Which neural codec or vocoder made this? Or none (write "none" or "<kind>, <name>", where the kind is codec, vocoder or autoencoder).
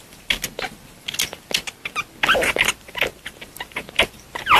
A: none